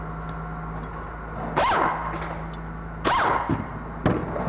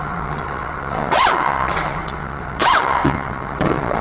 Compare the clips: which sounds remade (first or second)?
second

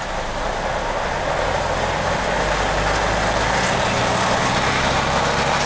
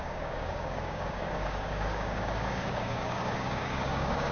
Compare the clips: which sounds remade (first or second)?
second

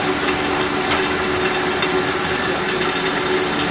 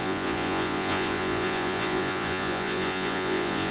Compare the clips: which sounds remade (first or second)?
second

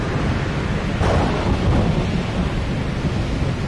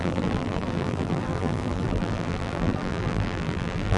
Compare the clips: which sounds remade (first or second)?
second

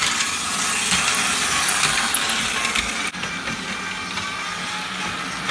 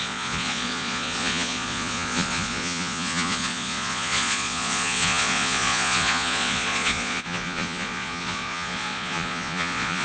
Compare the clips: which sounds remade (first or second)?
second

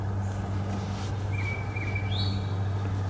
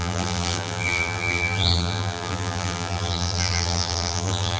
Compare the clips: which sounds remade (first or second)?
second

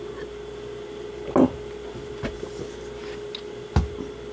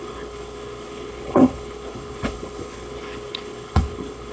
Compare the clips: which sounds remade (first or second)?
second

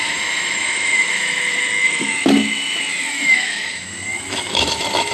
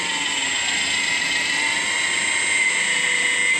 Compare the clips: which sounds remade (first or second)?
first